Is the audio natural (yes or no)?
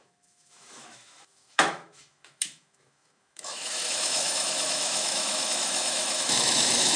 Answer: no